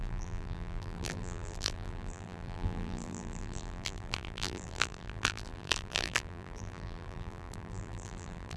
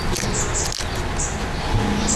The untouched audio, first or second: second